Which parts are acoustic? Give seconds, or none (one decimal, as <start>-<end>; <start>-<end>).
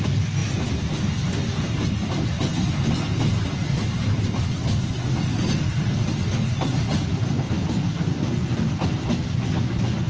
0.4-3.4; 4.6-7.7